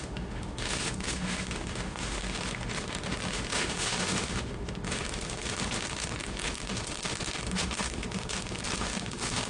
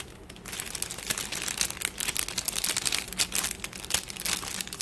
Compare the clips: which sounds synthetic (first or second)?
first